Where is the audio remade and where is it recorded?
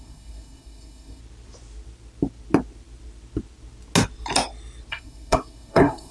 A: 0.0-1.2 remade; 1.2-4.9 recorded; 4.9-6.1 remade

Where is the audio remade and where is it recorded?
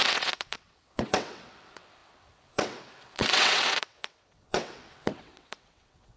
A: 0.0-6.2 remade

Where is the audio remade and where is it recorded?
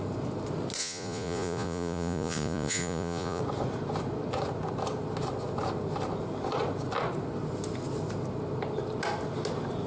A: 0.0-0.8 recorded; 0.8-3.4 remade; 3.4-9.9 recorded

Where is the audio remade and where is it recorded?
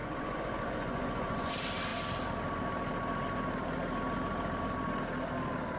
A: 0.0-1.5 remade; 1.5-5.8 recorded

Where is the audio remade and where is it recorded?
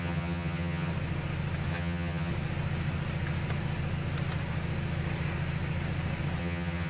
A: 0.0-0.9 remade; 0.9-1.7 recorded; 1.7-2.3 remade; 2.3-6.4 recorded; 6.4-6.9 remade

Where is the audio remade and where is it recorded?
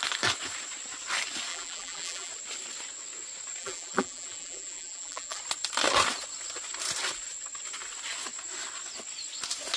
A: 0.0-1.5 recorded; 1.5-2.3 remade; 2.3-3.6 recorded; 3.6-5.4 remade; 5.4-9.8 recorded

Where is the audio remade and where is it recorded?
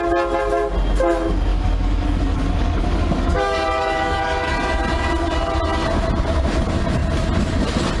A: 0.0-1.5 recorded; 1.5-4.5 remade; 4.5-8.0 recorded